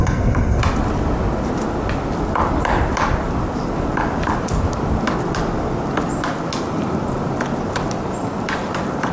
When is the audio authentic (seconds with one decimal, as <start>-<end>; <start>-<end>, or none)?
0.6-9.1